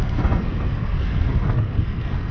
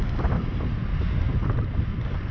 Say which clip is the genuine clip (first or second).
second